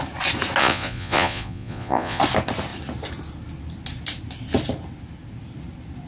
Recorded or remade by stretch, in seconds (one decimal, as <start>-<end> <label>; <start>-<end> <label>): 0.0-0.6 recorded; 0.6-2.2 remade; 2.2-6.1 recorded